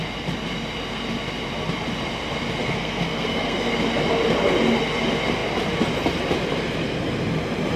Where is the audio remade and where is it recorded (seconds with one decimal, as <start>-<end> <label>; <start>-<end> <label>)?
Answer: 0.0-2.6 recorded; 2.6-3.7 remade; 3.7-7.8 recorded